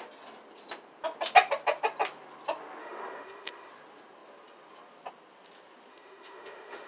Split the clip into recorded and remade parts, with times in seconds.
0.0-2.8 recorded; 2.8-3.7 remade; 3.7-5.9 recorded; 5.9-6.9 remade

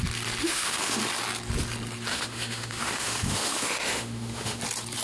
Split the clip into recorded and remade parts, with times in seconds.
0.0-0.4 recorded; 0.4-1.0 remade; 1.0-2.1 recorded; 2.1-4.6 remade; 4.6-5.0 recorded

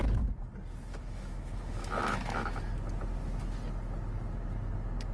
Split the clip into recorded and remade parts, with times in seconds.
0.0-0.9 recorded; 0.9-2.6 remade; 2.6-5.1 recorded

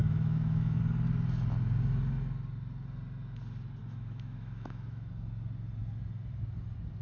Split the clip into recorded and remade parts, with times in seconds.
0.0-0.8 remade; 0.8-3.8 recorded; 3.8-5.1 remade; 5.1-7.0 recorded

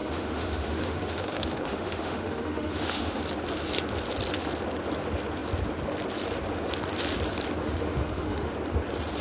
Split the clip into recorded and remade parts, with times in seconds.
0.0-3.2 remade; 3.2-7.6 recorded; 7.6-8.5 remade; 8.5-9.2 recorded

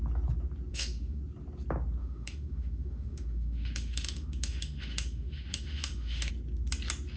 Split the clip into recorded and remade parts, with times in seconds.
0.0-0.7 recorded; 0.7-1.2 remade; 1.2-2.0 recorded; 2.0-6.3 remade; 6.3-7.2 recorded